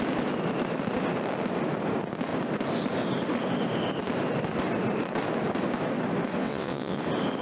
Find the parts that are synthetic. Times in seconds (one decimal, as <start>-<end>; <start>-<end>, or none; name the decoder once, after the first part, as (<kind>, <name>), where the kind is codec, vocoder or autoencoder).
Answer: 6.4-7.0 (vocoder, WaveNeXt)